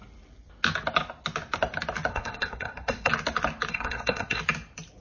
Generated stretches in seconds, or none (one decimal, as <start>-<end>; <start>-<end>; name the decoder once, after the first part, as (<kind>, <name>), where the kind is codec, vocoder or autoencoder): 2.1-3.1 (codec, SNAC); 3.7-4.4